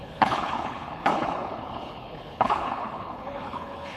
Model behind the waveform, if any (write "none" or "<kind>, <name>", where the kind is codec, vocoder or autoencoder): codec, HILCodec